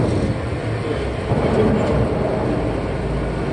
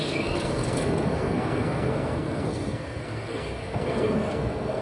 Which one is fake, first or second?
second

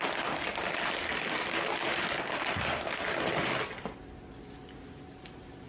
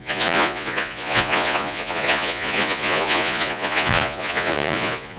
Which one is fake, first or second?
second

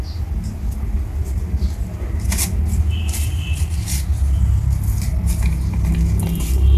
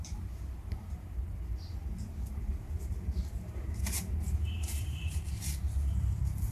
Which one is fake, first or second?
second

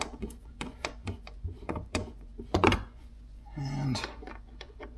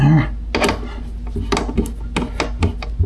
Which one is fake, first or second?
first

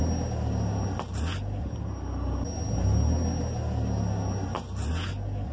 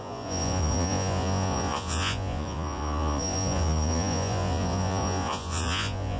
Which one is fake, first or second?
second